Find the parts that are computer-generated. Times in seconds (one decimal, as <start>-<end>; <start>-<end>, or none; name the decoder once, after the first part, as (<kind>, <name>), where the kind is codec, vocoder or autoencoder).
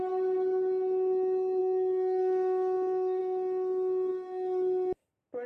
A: 1.6-3.2 (autoencoder, DAC-VAE)